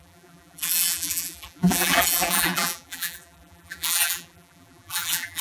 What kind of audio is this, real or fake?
fake